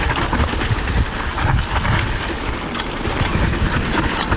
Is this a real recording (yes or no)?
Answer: yes